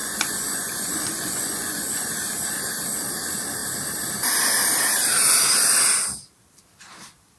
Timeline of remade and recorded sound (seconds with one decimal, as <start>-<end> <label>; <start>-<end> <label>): 0.0-2.1 remade; 2.1-7.4 recorded